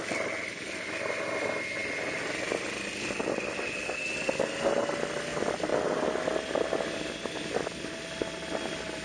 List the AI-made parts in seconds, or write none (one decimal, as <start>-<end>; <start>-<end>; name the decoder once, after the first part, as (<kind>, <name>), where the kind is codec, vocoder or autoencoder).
none

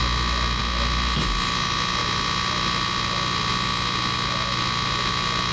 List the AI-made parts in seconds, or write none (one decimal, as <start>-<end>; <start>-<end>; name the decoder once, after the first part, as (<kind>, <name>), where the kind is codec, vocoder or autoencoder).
none

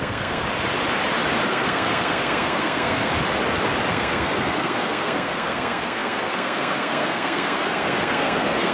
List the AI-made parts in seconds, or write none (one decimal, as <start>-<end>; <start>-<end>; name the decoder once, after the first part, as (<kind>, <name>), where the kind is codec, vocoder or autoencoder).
0.0-0.4 (codec, SNAC); 1.5-3.1; 3.9-8.7

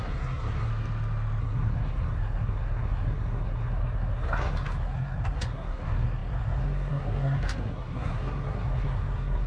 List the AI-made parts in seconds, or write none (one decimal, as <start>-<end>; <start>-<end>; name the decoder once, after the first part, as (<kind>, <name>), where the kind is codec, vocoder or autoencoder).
0.0-0.7 (codec, SNAC); 1.4-9.5

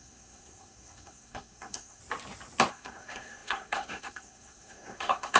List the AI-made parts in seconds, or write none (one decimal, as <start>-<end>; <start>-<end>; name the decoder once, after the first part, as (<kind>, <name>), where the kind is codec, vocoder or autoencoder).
0.0-2.0 (codec, SNAC); 2.7-5.4

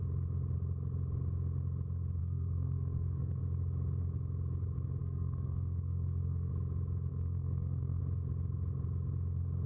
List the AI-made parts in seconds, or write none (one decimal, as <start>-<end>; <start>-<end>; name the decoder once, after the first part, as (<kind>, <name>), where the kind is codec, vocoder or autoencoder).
2.2-3.4 (codec, SNAC); 5.0-6.5; 7.1-8.0

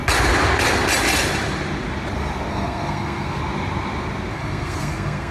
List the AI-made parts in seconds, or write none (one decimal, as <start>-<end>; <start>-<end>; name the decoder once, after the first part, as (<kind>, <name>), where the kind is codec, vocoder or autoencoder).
2.5-3.4 (codec, SNAC); 4.3-5.3